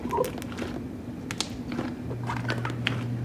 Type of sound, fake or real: real